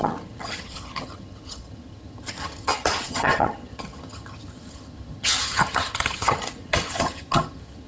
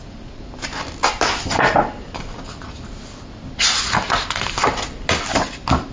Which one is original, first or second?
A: second